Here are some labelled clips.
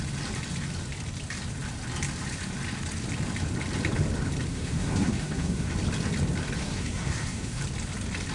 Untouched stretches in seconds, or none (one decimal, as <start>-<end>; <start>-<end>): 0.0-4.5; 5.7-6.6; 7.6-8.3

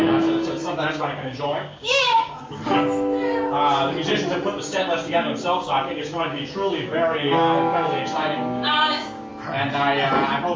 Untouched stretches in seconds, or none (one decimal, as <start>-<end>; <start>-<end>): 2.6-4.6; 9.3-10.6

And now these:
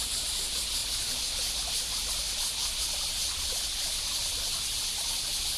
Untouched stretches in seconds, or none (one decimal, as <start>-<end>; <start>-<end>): 0.0-5.6

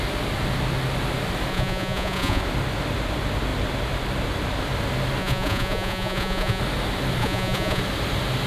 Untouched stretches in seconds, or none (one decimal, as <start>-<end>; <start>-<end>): 0.0-1.5; 2.4-5.2; 6.6-7.2; 7.8-8.5

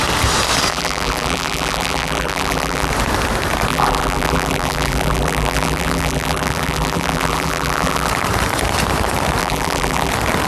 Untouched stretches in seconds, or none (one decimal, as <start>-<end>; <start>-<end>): 0.0-0.7; 2.9-3.7; 8.1-9.4; 10.1-10.5

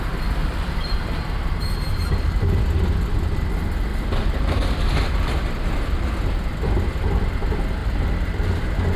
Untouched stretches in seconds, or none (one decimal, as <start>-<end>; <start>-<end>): 0.0-0.4; 2.6-3.9; 5.1-7.8; 8.5-9.0

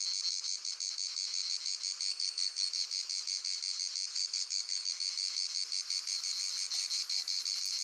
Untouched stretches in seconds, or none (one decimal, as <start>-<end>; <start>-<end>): 0.0-2.1; 2.7-4.1; 4.9-7.8

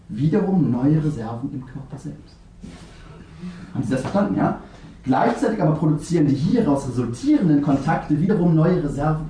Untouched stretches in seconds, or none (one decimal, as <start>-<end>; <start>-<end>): 0.0-9.3